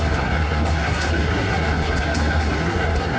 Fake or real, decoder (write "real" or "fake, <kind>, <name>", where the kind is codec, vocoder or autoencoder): fake, codec, SNAC